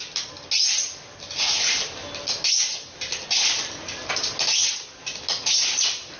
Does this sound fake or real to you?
real